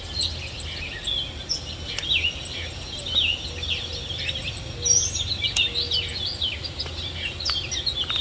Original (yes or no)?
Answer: yes